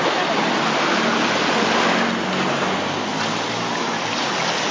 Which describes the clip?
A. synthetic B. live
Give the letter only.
B